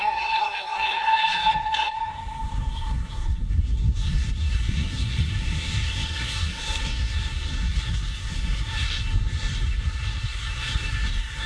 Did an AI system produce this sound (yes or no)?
yes